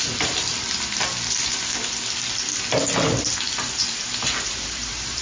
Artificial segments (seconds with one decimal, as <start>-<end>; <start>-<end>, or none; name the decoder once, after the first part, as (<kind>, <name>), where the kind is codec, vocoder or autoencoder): 0.0-0.5 (vocoder, BigVGAN v2); 3.6-5.2

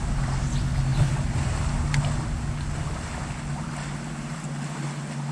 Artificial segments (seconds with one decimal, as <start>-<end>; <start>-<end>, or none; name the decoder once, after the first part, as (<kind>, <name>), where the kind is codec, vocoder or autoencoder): none

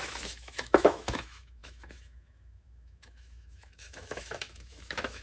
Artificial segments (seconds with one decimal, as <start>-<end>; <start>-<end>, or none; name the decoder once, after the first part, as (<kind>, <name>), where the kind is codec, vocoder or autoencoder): 0.0-5.2 (autoencoder, DAC-VAE)

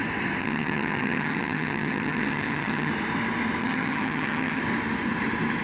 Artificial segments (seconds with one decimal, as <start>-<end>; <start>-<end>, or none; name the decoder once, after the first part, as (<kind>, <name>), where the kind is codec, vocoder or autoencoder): 0.4-2.9 (vocoder, HiFi-GAN); 3.6-4.6